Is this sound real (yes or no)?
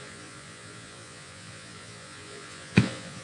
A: no